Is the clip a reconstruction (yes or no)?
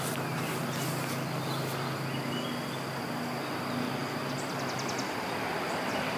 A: no